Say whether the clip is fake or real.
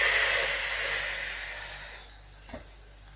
real